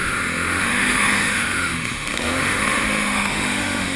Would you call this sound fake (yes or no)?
yes